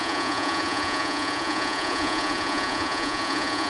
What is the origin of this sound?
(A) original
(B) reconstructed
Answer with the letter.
B